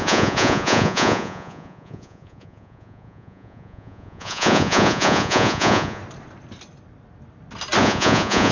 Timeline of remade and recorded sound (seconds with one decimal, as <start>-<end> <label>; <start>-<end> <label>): 0.0-6.0 remade; 6.0-7.8 recorded; 7.8-8.5 remade